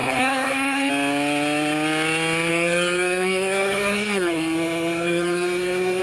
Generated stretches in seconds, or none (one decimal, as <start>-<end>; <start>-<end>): 0.0-0.9; 2.5-6.0